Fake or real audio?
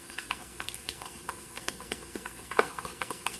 fake